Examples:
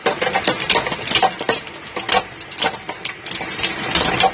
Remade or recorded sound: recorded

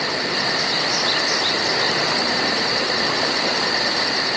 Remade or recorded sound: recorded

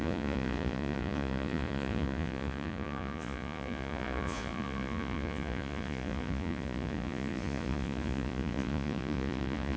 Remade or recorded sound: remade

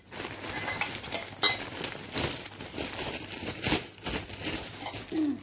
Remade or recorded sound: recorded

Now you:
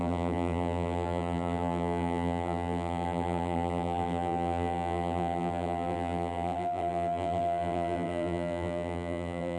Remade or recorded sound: remade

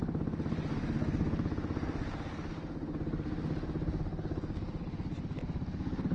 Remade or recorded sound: recorded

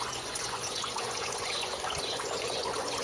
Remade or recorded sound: remade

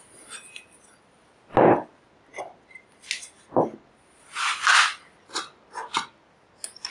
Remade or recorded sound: recorded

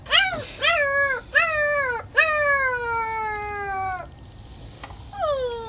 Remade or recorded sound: recorded